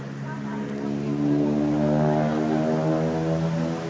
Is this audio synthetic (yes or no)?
no